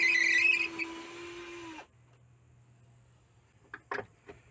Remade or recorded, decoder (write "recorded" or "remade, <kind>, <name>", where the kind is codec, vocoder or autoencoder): recorded